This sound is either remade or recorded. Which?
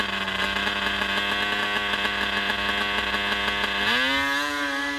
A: recorded